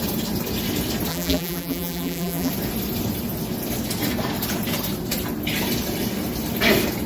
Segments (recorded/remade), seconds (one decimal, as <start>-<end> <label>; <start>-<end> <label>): 0.0-1.1 recorded; 1.1-2.5 remade; 2.5-7.1 recorded